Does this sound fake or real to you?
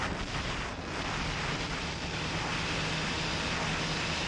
real